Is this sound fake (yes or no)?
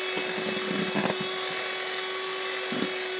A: no